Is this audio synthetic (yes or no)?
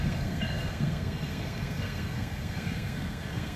yes